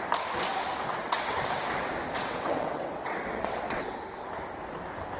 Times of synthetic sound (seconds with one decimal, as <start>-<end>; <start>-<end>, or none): 0.9-1.4; 2.2-3.9

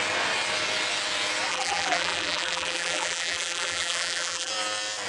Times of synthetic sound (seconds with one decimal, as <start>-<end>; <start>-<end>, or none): 1.5-4.5

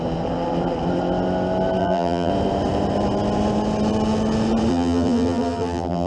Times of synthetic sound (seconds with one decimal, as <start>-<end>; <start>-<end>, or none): 1.8-2.3; 4.7-6.1

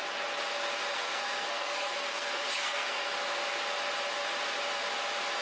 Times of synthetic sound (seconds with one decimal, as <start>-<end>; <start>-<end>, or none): 0.9-3.1

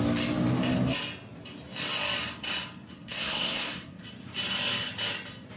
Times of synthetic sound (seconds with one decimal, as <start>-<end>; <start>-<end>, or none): 2.9-4.0

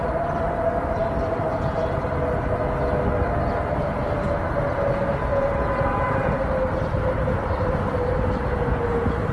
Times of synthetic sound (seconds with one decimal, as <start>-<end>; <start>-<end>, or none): 5.3-6.3

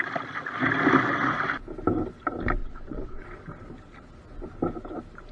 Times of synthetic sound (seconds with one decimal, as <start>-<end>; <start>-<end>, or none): 2.6-3.2